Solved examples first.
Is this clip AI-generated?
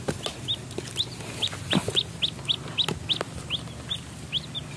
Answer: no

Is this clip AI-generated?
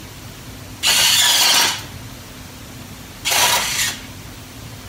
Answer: no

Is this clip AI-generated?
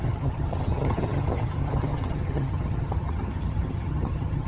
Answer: yes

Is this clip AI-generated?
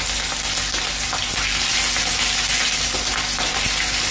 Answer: no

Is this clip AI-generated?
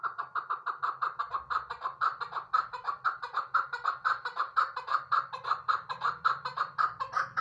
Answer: no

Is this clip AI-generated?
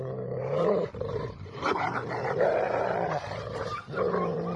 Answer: yes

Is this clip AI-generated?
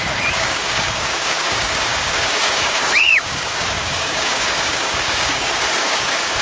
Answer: yes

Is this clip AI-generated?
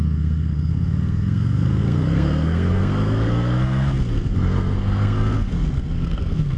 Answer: yes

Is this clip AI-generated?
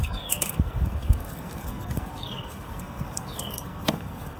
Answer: yes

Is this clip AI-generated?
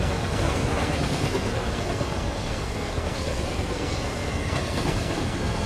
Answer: yes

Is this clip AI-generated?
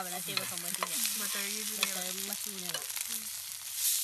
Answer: no